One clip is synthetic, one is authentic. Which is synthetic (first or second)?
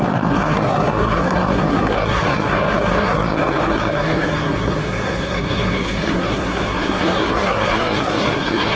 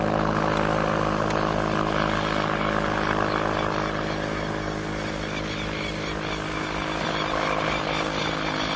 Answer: first